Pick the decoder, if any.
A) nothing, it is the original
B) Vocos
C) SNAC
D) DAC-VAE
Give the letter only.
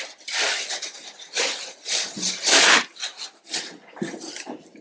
A